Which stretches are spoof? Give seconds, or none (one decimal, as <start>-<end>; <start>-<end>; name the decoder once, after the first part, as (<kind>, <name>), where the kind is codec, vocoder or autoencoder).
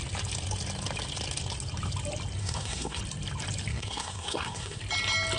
2.4-3.0 (codec, SNAC); 3.7-4.8